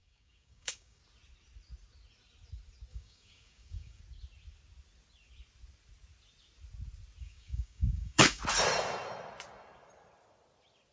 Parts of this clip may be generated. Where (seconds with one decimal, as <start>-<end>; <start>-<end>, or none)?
0.0-1.0; 2.9-4.0; 7.2-8.4